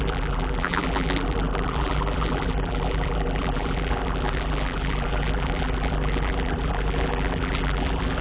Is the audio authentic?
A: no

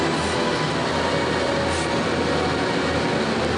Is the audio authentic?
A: yes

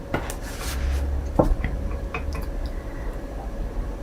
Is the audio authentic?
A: yes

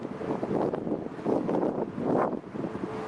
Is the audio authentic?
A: yes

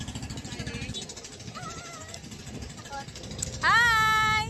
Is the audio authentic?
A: yes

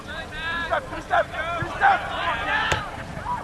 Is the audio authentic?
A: no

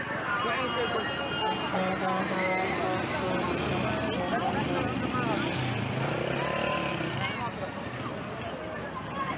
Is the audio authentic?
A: yes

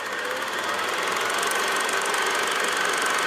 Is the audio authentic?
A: yes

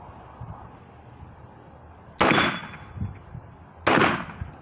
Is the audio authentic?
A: yes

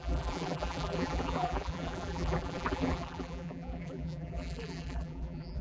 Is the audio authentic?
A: no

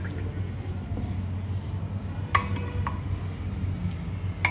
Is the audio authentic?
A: yes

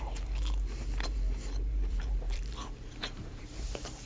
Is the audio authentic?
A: no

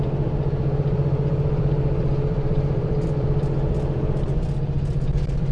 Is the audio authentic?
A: no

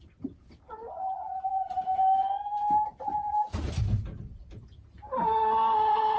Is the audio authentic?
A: yes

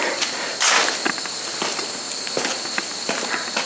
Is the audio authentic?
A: yes